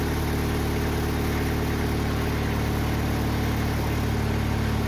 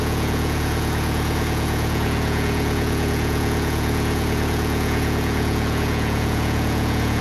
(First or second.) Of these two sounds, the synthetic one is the second